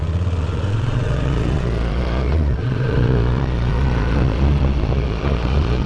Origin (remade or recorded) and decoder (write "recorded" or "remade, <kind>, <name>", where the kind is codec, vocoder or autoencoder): remade, vocoder, Vocos